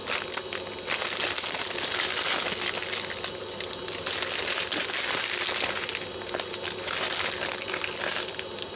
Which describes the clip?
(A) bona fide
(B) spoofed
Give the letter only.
A